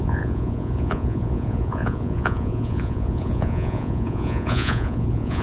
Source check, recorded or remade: remade